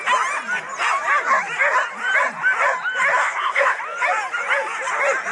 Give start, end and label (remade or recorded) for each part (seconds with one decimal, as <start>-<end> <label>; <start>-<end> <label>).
0.0-3.2 recorded; 3.2-3.8 remade; 3.8-5.3 recorded